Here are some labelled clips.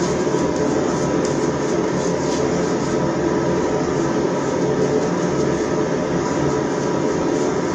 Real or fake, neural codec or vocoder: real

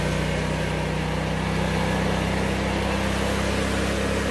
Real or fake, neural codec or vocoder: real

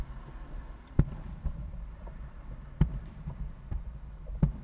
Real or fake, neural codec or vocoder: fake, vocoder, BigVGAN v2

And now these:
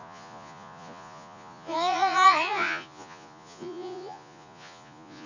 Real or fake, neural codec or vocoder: fake, vocoder, Vocos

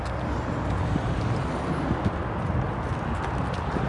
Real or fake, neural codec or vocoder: real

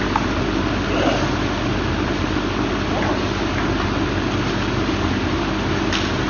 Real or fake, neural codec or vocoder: real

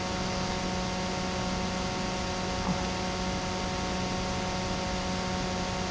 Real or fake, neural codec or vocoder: real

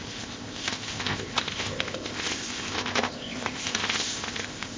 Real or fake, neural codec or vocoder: fake, codec, ZipCodec